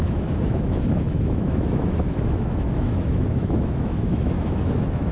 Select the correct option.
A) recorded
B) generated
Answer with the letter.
B